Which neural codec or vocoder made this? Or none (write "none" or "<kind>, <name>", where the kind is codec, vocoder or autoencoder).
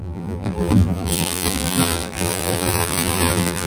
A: vocoder, BigVGAN v2